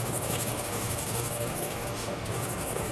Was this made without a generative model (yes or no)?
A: no